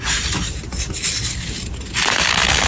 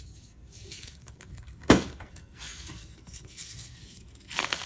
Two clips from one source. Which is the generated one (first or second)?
second